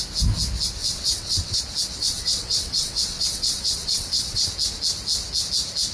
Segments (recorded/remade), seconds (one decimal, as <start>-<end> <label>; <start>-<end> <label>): 0.0-0.8 recorded; 0.8-1.6 remade; 1.6-2.0 recorded; 2.0-4.5 remade; 4.5-5.9 recorded